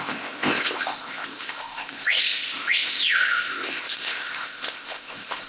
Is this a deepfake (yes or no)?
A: yes